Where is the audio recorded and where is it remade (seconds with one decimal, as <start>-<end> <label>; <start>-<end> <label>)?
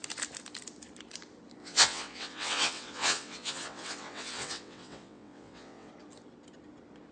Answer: 0.0-1.6 recorded; 1.6-5.9 remade; 5.9-7.1 recorded